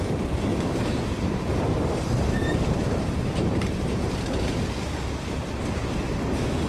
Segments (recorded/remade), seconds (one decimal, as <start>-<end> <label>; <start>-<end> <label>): 0.0-0.5 recorded; 0.5-4.5 remade; 4.5-5.8 recorded; 5.8-6.7 remade